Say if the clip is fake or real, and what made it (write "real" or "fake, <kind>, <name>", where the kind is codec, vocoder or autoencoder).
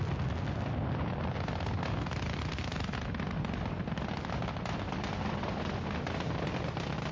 real